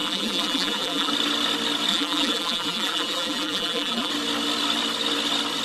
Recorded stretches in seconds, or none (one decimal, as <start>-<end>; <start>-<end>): 1.1-1.9; 4.1-5.6